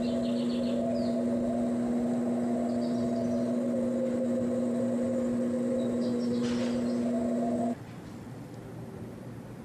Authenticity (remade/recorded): recorded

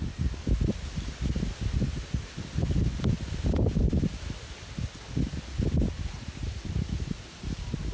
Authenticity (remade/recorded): recorded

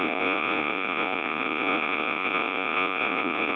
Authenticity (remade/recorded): remade